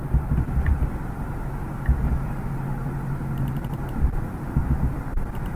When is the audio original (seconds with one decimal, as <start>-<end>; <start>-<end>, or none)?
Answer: 0.0-5.6